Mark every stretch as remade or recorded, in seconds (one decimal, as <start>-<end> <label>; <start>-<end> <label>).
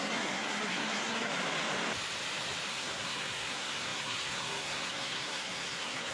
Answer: 0.0-1.3 remade; 1.3-2.7 recorded; 2.7-6.1 remade